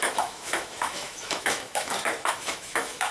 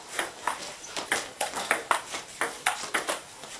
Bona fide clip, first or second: second